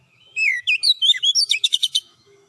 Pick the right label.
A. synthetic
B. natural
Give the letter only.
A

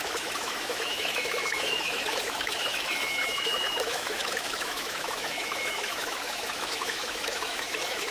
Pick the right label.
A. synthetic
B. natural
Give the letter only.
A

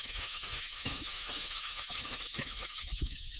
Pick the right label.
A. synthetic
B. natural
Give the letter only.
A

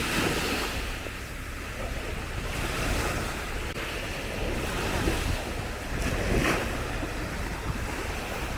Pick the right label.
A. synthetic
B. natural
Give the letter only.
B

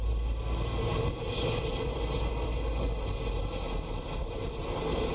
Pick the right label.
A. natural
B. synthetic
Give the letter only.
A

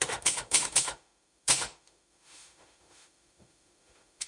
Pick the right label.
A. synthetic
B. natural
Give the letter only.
A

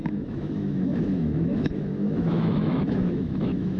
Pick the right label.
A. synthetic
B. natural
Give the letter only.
A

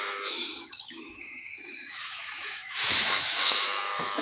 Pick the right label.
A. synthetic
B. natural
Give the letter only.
A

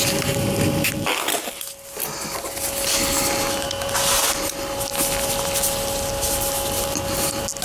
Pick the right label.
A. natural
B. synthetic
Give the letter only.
A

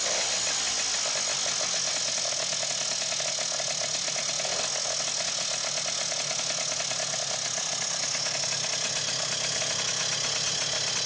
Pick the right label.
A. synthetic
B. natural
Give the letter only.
B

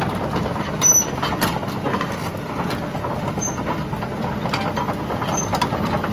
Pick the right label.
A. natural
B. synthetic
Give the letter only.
A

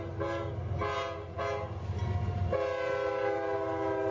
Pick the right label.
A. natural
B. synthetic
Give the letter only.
A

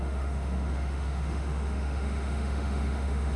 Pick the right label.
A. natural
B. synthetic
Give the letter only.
B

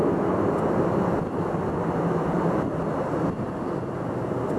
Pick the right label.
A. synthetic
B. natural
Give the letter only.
B